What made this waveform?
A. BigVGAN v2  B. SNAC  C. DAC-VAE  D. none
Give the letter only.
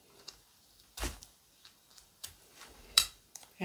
A